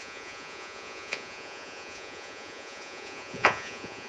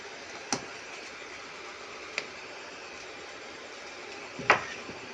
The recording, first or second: second